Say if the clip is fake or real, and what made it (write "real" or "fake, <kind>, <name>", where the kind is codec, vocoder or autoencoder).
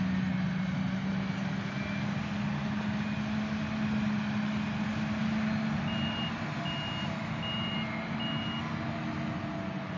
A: real